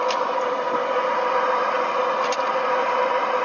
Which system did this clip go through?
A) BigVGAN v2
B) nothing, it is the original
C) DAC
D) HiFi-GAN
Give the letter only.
B